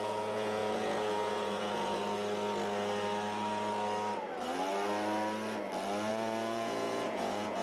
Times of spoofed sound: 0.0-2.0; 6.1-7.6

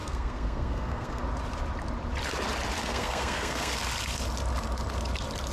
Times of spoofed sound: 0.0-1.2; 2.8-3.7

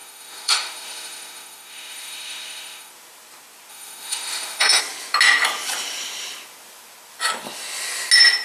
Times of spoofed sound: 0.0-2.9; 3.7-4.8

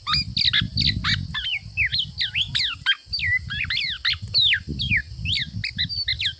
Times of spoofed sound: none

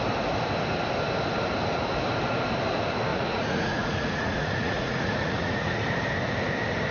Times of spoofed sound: 3.1-5.8

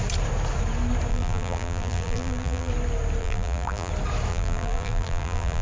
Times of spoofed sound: 1.1-2.7; 3.2-3.9; 4.3-5.6

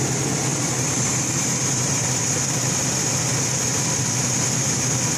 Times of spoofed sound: 0.5-2.2